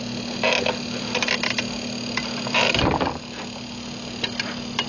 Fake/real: real